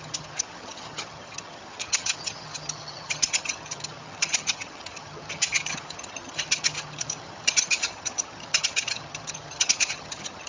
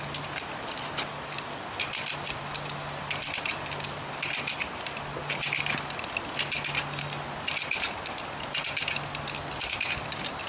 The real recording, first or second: second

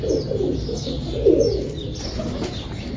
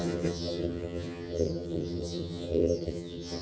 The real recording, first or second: first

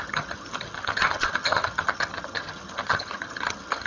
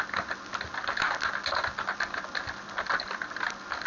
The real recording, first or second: second